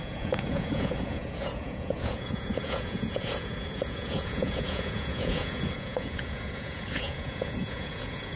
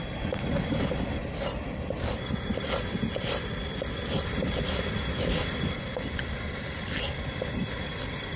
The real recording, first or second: second